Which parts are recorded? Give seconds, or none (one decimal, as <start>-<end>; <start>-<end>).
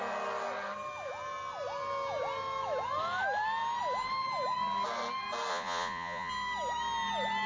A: 0.0-5.5; 6.3-7.5